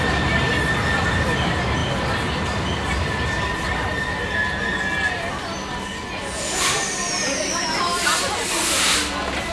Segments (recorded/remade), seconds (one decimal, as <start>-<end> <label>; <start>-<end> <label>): 0.0-9.5 recorded